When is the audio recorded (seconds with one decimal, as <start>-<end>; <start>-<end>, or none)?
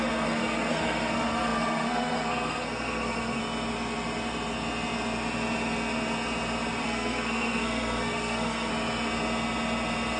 3.4-6.8; 8.7-10.2